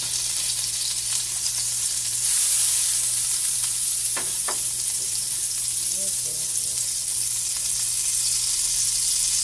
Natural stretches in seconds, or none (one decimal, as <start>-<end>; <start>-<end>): 7.0-9.4